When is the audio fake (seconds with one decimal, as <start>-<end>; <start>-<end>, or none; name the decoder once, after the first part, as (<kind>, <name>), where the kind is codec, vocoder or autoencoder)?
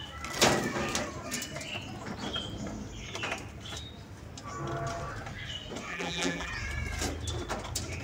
5.9-6.5 (vocoder, BigVGAN v2)